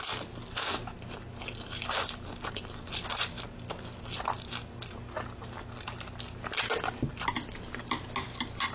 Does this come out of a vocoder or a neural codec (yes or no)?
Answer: no